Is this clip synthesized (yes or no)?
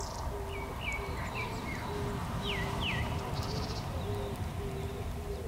no